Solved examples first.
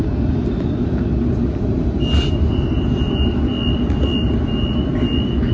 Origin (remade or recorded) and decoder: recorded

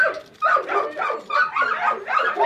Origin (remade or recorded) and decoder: recorded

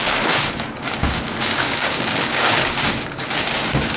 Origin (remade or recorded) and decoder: remade, codec, DAC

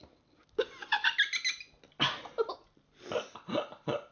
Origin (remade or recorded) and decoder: recorded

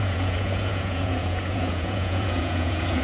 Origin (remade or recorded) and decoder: remade, vocoder, Vocos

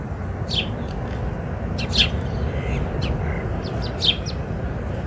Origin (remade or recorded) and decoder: recorded